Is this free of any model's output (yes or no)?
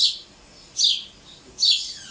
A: yes